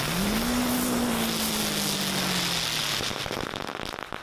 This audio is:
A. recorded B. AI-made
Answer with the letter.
A